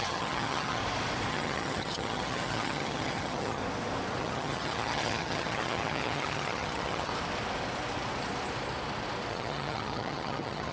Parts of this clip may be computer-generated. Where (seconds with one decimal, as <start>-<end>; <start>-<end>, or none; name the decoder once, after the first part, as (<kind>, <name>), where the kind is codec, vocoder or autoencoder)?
0.0-0.8 (vocoder, HiFi-GAN); 1.3-3.6; 4.2-7.1; 9.3-10.7